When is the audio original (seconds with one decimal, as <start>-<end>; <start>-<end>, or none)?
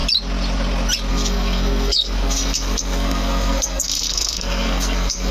0.0-1.1